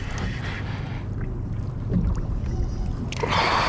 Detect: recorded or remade recorded